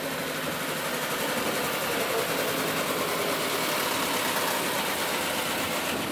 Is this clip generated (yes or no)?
no